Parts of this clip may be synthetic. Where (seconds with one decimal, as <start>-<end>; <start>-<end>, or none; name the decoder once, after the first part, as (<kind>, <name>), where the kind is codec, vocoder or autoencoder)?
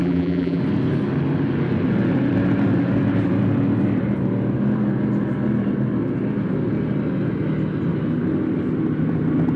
0.0-0.6 (vocoder, BigVGAN v2)